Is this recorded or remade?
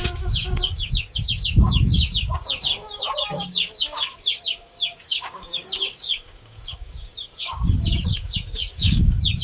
remade